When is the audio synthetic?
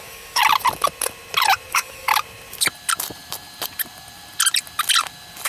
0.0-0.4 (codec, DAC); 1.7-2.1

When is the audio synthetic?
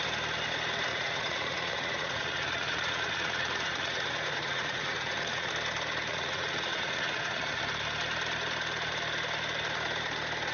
0.9-5.5 (vocoder, Vocos); 6.1-7.6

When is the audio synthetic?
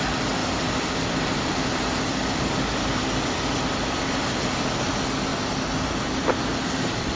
none